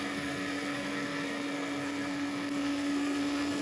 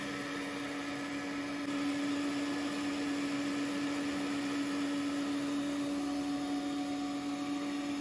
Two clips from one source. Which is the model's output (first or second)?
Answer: first